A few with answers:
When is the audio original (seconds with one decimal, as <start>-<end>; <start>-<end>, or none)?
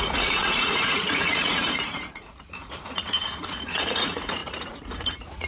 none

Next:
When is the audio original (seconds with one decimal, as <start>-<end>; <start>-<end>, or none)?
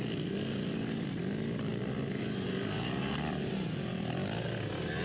0.0-5.0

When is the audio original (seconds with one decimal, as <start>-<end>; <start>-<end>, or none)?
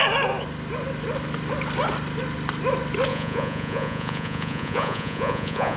0.0-3.1